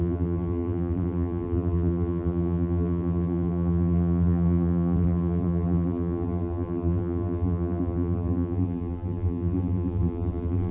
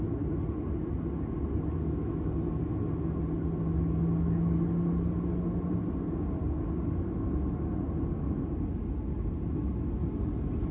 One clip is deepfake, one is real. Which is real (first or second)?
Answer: second